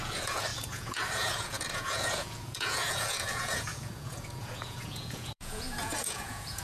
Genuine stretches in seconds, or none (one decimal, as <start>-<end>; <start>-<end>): none